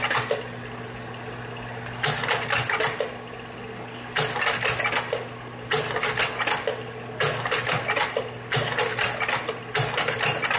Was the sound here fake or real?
real